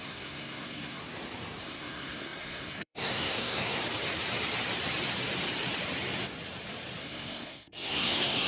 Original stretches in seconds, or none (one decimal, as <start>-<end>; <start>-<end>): 1.0-1.6; 3.8-7.0